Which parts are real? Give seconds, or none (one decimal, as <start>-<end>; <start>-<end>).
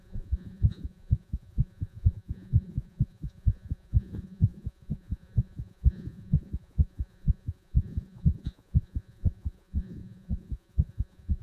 none